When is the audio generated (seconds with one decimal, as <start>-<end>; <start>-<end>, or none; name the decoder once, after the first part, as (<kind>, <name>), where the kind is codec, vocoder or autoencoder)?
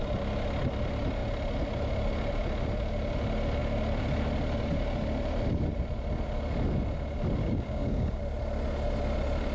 7.4-8.2 (codec, DAC)